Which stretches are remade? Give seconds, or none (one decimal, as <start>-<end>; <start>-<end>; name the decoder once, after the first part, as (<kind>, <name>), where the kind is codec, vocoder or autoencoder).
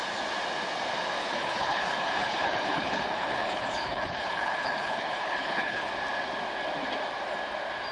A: 1.2-5.9 (codec, HILCodec)